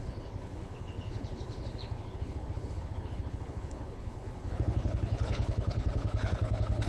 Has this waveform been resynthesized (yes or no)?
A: yes